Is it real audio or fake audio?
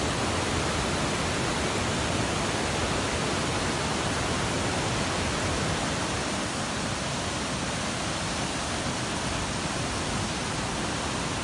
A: real